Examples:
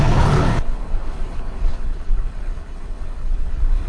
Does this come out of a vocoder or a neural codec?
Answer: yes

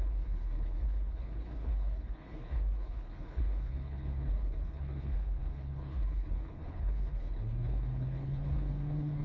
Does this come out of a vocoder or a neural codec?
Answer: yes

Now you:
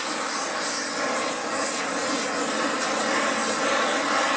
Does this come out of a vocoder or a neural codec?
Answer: no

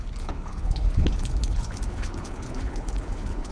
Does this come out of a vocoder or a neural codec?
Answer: yes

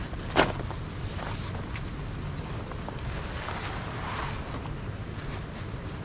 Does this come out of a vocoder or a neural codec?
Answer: no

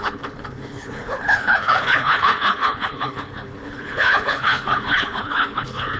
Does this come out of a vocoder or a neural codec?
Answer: yes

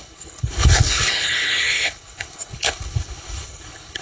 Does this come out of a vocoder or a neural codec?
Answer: yes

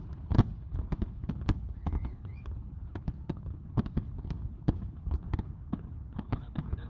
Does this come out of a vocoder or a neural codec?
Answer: yes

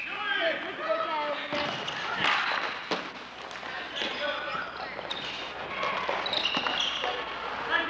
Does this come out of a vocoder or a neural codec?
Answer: no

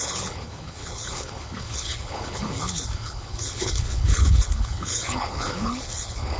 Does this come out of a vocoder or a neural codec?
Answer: yes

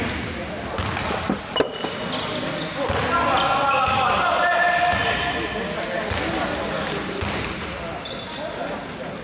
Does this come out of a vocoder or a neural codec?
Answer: no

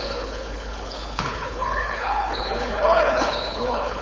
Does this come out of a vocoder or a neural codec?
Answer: yes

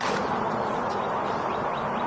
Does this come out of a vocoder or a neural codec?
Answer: no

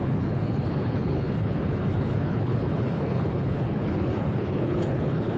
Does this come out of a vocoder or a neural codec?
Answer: yes